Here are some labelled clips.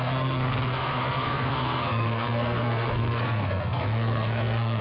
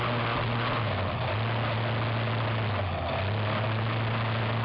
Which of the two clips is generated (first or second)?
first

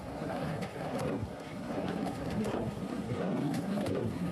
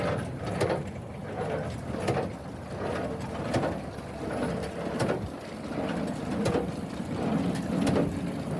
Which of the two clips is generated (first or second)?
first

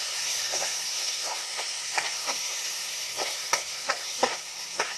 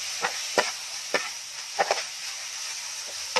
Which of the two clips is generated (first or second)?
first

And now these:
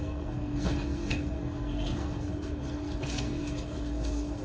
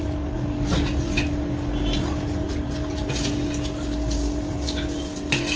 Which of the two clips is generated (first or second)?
first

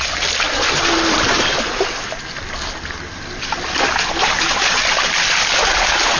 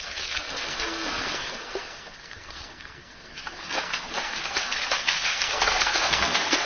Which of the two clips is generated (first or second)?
second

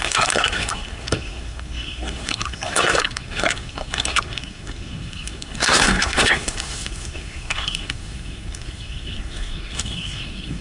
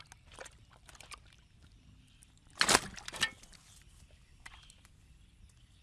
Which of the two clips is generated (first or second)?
first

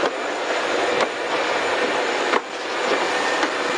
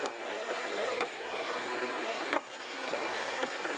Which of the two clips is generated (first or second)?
second